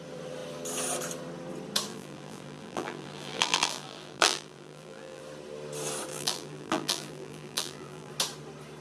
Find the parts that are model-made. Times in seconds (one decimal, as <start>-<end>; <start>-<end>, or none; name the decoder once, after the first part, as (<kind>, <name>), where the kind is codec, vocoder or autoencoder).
1.9-5.2 (vocoder, BigVGAN v2); 6.1-8.1